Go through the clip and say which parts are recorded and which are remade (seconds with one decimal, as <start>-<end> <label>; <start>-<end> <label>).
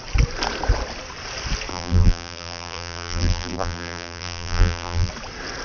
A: 0.0-1.7 recorded; 1.7-5.1 remade; 5.1-5.6 recorded